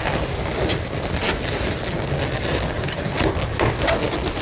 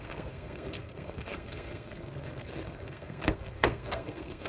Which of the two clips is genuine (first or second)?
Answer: first